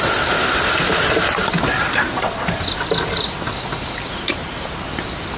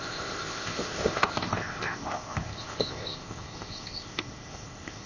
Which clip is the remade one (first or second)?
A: second